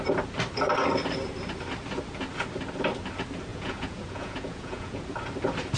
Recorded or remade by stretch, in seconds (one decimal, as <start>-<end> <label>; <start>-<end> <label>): 0.0-3.5 recorded; 3.5-5.0 remade; 5.0-5.8 recorded